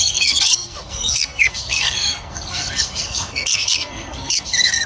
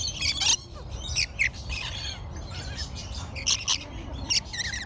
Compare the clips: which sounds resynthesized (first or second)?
first